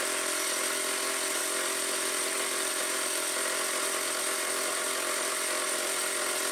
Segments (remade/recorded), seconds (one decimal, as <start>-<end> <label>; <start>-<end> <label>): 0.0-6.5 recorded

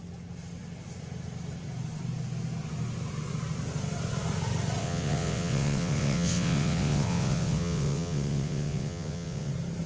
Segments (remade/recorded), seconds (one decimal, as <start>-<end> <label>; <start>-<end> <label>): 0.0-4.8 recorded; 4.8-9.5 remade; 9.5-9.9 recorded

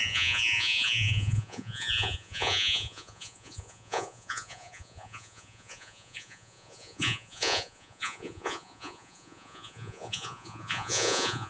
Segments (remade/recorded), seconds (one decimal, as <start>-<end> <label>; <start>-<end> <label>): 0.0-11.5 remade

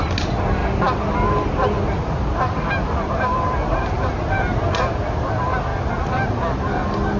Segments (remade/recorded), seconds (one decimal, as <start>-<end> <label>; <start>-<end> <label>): 0.0-7.2 recorded

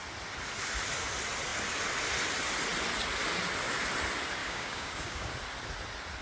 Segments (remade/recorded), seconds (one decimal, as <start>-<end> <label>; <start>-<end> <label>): 0.0-4.4 recorded; 4.4-5.3 remade; 5.3-6.2 recorded